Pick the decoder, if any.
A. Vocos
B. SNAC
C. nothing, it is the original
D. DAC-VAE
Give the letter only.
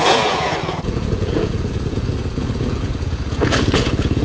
A